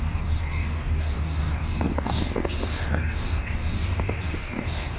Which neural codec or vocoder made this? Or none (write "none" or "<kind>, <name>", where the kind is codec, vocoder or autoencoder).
codec, DAC